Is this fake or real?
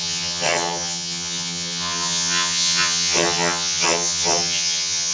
fake